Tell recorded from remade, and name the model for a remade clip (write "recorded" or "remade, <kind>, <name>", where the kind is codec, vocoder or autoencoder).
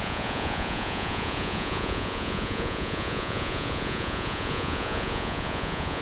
remade, vocoder, Vocos